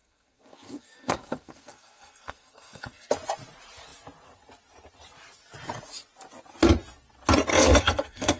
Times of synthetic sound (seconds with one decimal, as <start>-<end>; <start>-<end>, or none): 0.0-3.1; 7.5-8.4